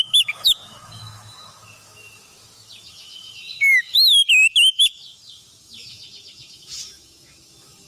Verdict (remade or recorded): remade